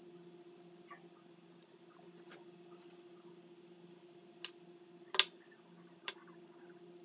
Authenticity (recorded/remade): recorded